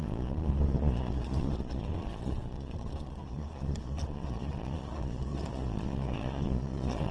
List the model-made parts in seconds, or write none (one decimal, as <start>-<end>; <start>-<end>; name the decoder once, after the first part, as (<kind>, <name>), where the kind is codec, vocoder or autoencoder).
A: 0.0-7.1 (vocoder, Vocos)